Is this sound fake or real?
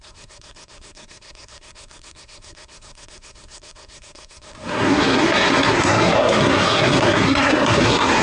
fake